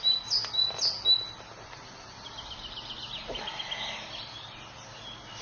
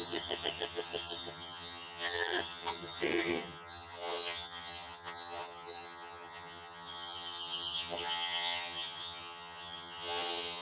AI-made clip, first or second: second